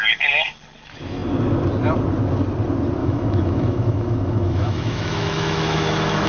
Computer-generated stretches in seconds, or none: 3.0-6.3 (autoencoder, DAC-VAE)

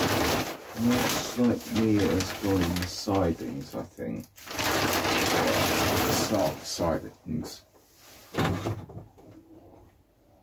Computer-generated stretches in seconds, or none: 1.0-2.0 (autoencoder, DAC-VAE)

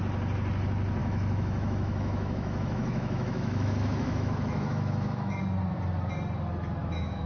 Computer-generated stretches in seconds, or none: 1.0-5.4 (autoencoder, DAC-VAE); 6.8-7.3